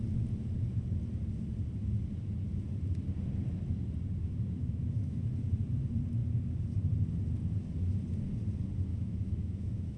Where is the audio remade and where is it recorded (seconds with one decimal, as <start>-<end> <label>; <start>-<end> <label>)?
0.0-4.2 recorded; 4.2-5.3 remade; 5.3-8.9 recorded; 8.9-10.0 remade